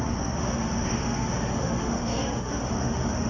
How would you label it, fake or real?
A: fake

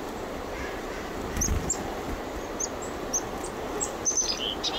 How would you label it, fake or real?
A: real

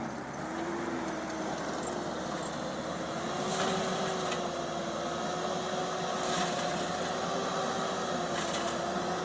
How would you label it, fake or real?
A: real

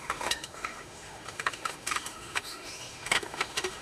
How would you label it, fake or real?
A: fake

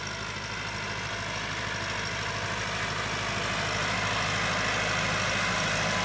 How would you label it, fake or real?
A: real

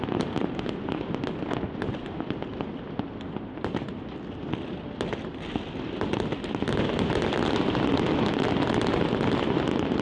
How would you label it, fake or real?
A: real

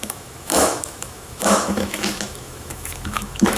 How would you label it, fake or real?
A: fake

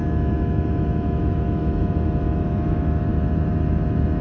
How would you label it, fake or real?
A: fake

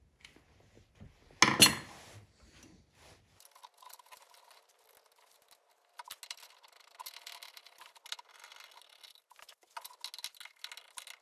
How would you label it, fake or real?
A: real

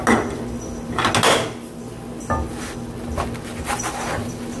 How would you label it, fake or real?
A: real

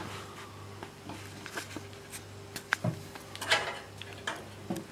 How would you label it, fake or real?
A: real